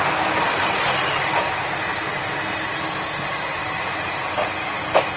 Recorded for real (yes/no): yes